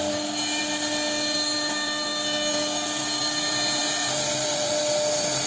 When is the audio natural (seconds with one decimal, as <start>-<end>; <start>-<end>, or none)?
0.0-3.8; 4.7-5.5